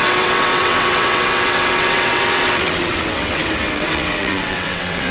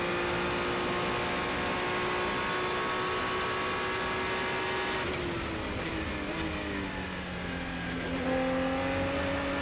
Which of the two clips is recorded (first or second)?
second